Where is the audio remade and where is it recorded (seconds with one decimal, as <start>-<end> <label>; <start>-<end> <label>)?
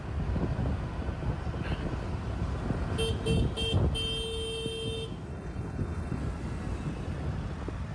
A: 0.0-5.3 recorded; 5.3-6.2 remade; 6.2-7.9 recorded